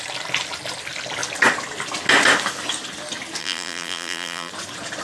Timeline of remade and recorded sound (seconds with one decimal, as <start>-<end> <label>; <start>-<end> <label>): 0.0-3.4 recorded; 3.4-4.5 remade; 4.5-5.0 recorded